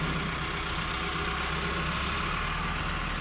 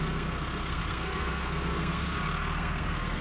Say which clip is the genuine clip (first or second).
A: first